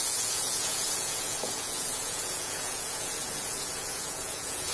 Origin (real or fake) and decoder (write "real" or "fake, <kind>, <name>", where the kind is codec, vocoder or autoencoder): fake, vocoder, Vocos